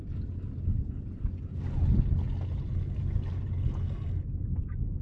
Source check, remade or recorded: recorded